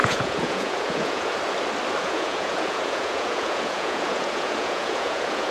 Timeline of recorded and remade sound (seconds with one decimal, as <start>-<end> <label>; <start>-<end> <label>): 0.0-1.3 remade; 1.3-2.0 recorded; 2.0-5.5 remade